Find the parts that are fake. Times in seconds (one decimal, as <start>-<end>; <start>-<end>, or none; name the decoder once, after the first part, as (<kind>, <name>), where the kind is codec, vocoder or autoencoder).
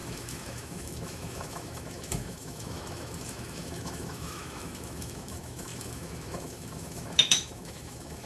0.0-8.3 (autoencoder, DAC-VAE)